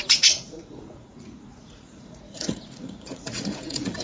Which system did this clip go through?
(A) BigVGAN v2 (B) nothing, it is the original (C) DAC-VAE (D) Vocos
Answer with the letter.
D